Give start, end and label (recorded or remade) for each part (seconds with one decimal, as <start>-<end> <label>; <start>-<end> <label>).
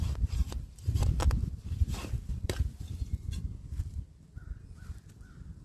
0.0-0.4 recorded; 0.4-3.8 remade; 3.8-5.6 recorded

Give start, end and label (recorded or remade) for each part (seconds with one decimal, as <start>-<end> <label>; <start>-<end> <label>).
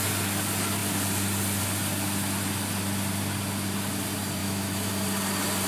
0.0-4.4 recorded; 4.4-4.9 remade; 4.9-5.7 recorded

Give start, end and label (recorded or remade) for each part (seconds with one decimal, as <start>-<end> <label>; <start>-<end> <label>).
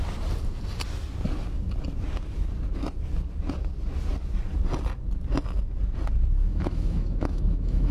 0.0-6.5 recorded; 6.5-7.9 remade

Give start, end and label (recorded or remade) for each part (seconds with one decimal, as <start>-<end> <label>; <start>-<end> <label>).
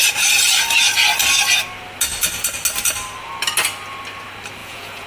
0.0-4.6 recorded; 4.6-5.1 remade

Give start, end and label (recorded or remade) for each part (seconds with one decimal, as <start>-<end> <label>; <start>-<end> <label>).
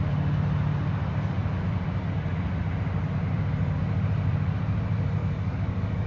0.0-5.2 recorded; 5.2-6.1 remade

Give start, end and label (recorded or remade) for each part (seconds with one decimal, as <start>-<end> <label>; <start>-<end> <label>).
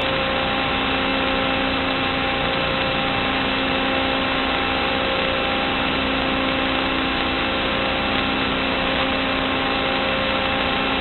0.0-11.0 recorded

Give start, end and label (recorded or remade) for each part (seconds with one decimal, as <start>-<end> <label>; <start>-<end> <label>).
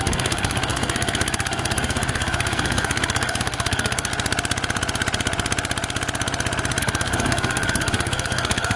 0.0-4.1 remade; 4.1-6.8 recorded; 6.8-8.8 remade